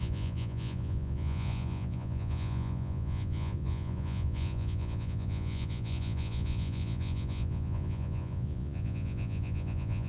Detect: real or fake fake